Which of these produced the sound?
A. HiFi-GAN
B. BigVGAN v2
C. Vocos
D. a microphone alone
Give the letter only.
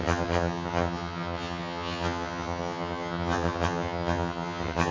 A